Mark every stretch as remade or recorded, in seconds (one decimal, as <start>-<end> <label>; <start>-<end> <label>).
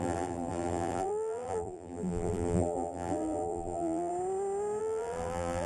0.0-4.1 remade; 4.1-4.8 recorded; 4.8-5.7 remade